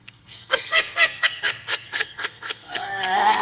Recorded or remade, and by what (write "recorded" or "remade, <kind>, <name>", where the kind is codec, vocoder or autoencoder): remade, codec, SNAC